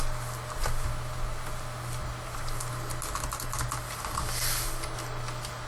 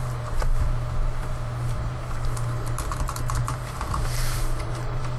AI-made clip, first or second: second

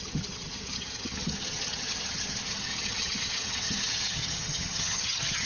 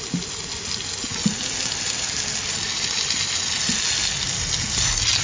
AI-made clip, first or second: first